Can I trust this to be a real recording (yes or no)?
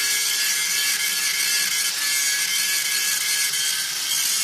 yes